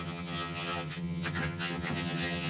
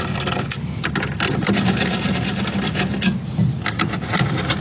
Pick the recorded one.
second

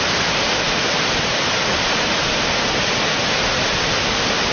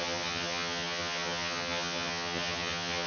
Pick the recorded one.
first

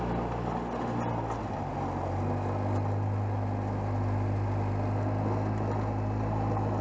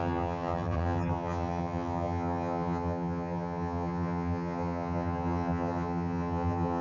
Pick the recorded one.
first